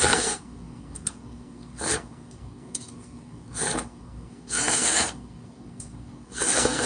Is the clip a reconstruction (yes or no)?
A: yes